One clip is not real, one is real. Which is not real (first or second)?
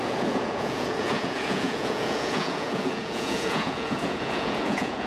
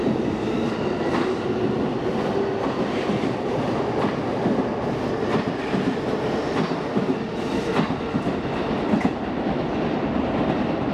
first